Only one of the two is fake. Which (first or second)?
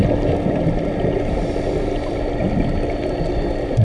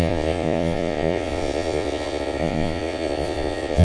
second